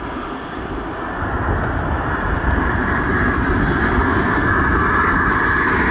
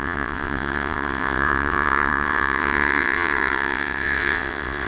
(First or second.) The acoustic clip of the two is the first